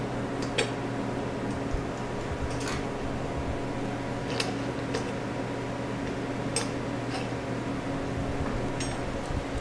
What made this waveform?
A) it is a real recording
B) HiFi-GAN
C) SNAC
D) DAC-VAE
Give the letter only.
A